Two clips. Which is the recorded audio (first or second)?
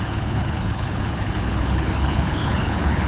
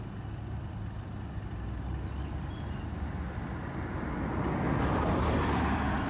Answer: second